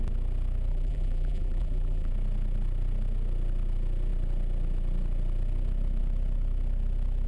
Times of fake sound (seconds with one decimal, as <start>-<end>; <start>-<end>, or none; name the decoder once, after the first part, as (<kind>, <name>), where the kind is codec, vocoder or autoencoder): 0.7-2.1 (vocoder, BigVGAN v2)